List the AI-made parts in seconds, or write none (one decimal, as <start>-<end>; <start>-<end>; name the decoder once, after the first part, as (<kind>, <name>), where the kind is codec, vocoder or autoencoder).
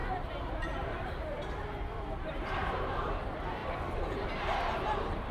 0.0-3.2 (vocoder, BigVGAN v2); 3.6-5.3